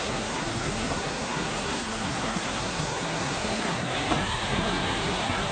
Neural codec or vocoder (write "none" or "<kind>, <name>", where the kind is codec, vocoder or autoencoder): codec, SNAC